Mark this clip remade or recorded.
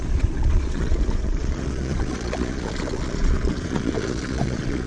remade